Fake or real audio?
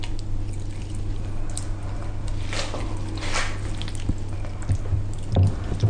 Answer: real